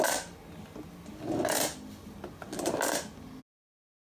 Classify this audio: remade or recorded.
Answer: recorded